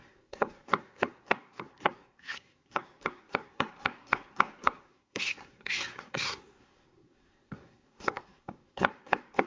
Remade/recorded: remade